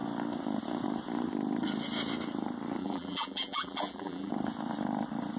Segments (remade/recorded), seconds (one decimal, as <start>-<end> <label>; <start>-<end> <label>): 0.0-2.8 recorded; 2.8-4.3 remade; 4.3-5.4 recorded